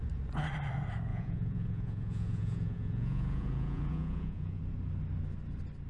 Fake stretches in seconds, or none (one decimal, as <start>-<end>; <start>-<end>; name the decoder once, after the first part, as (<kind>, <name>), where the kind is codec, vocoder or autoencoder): 1.1-4.6 (vocoder, Vocos)